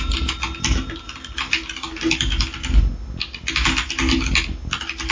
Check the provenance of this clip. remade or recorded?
recorded